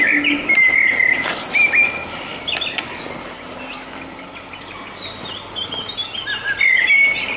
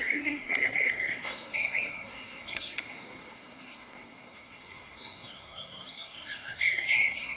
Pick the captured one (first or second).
first